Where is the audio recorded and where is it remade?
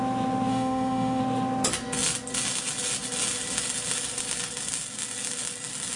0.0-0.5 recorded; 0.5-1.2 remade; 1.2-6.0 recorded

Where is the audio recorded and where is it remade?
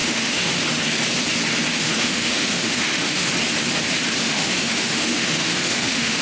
0.0-0.5 remade; 0.5-1.7 recorded; 1.7-3.3 remade; 3.3-4.2 recorded; 4.2-6.2 remade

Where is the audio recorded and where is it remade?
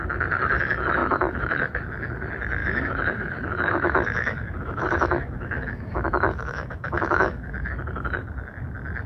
0.0-1.0 recorded; 1.0-1.6 remade; 1.6-2.6 recorded; 2.6-7.7 remade; 7.7-9.1 recorded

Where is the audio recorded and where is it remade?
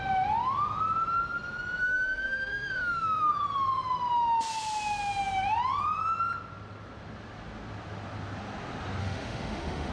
0.0-1.8 recorded; 1.8-3.3 remade; 3.3-9.0 recorded; 9.0-9.9 remade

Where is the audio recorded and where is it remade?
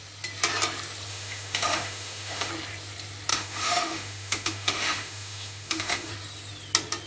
0.0-1.1 recorded; 1.1-2.5 remade; 2.5-3.3 recorded; 3.3-6.1 remade; 6.1-7.1 recorded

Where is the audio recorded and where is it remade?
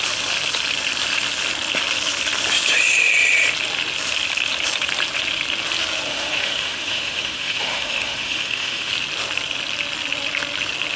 0.0-6.1 recorded; 6.1-8.9 remade; 8.9-11.0 recorded